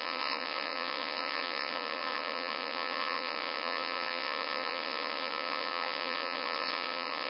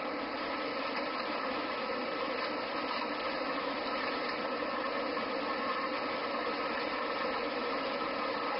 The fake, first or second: first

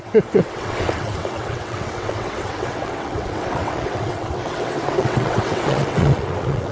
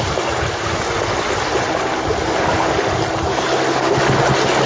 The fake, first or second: first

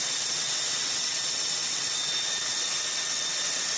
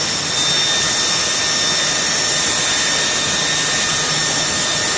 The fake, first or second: first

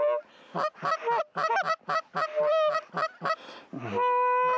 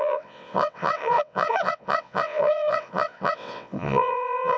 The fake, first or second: second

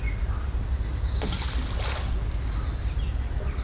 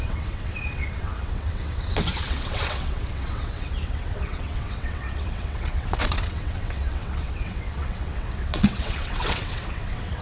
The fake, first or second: second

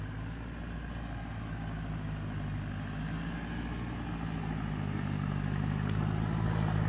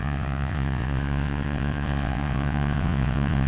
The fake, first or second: second